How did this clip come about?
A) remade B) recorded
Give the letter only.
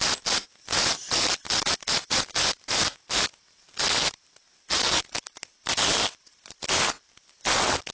B